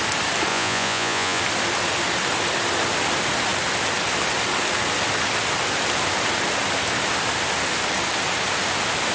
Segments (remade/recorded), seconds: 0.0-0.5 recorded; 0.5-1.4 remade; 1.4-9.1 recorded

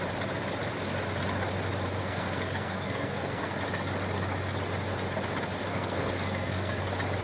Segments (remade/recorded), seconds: 0.0-2.0 recorded; 2.0-3.6 remade; 3.6-5.7 recorded; 5.7-6.8 remade; 6.8-7.2 recorded

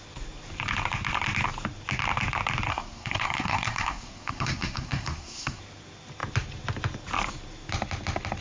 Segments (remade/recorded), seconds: 0.0-2.7 recorded; 2.7-5.6 remade; 5.6-8.4 recorded

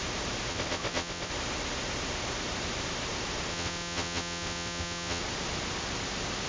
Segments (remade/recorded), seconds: 0.0-0.5 recorded; 0.5-1.3 remade; 1.3-3.5 recorded; 3.5-5.2 remade; 5.2-6.5 recorded

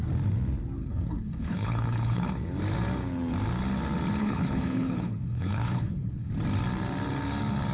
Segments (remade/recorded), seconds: 0.0-0.8 recorded; 0.8-2.3 remade; 2.3-4.2 recorded; 4.2-6.3 remade; 6.3-7.7 recorded

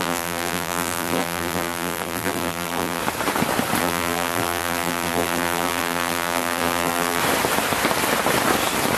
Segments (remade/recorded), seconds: 0.0-3.0 remade; 3.0-3.8 recorded; 3.8-7.2 remade; 7.2-9.0 recorded

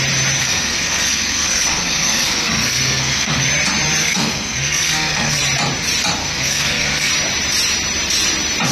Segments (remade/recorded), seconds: 0.0-0.4 recorded; 0.4-3.5 remade; 3.5-4.0 recorded; 4.0-5.4 remade; 5.4-6.2 recorded; 6.2-7.1 remade; 7.1-8.7 recorded